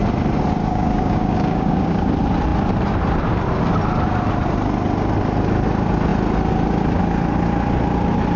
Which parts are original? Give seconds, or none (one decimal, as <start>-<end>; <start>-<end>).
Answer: 0.0-0.6; 2.1-8.4